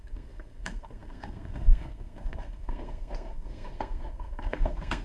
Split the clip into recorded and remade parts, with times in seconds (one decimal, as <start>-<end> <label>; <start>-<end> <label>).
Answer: 0.0-5.0 remade